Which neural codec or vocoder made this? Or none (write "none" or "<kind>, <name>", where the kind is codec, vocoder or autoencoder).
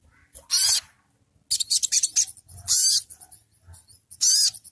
none